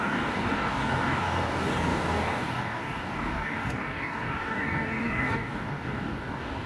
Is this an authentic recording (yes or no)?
no